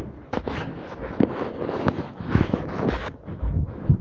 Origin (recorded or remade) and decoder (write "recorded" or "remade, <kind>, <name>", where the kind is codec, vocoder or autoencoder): remade, autoencoder, DAC-VAE